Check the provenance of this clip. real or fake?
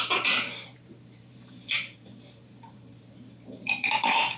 fake